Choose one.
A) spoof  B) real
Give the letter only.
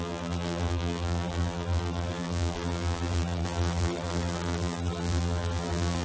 A